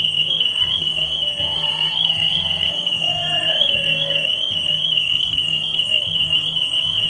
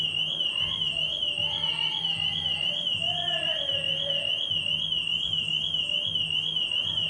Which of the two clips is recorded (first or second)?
second